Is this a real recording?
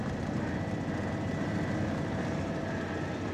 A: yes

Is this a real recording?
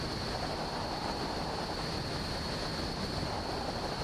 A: yes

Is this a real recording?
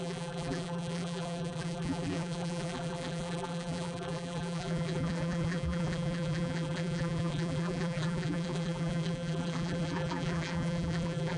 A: no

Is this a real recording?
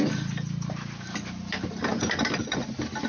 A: no